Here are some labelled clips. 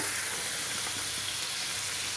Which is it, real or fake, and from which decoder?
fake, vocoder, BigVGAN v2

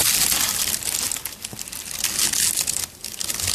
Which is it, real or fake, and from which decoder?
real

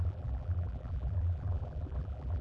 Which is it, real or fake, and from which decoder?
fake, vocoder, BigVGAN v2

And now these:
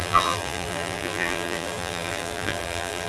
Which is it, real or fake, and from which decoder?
fake, vocoder, BigVGAN v2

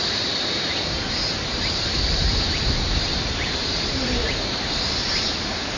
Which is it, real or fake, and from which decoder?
fake, vocoder, BigVGAN v2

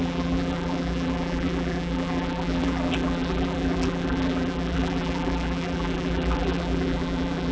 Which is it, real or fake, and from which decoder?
fake, vocoder, BigVGAN v2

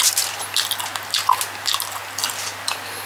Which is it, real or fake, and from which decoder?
real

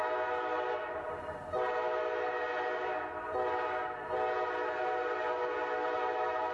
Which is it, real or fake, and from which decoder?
real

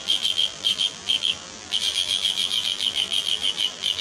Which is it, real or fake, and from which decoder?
fake, vocoder, BigVGAN v2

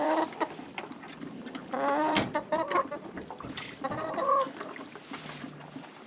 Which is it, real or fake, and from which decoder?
fake, vocoder, BigVGAN v2